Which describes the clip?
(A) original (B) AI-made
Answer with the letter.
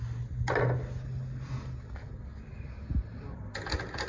A